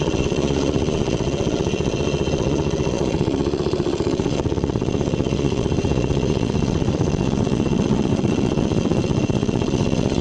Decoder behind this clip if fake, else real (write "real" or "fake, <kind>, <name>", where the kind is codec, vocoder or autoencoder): fake, vocoder, Vocos